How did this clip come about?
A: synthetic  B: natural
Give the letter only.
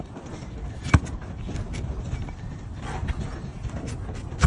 B